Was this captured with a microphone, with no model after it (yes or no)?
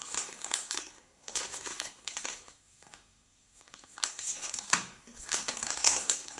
no